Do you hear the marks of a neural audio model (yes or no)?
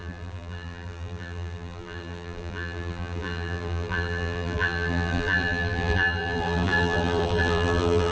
yes